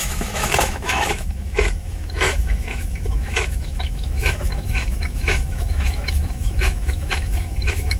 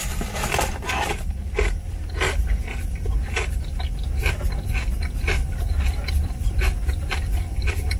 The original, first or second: second